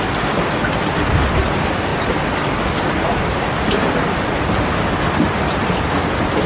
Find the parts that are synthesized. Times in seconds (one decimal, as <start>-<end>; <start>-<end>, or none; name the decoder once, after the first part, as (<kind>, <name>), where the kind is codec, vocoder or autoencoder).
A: none